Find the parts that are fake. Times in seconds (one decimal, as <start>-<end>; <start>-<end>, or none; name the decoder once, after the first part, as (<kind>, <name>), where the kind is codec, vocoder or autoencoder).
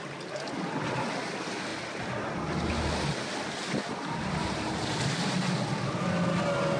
none